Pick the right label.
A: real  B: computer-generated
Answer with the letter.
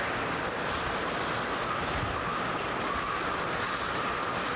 A